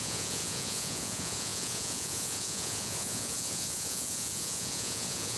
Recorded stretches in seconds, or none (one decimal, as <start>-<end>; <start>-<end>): none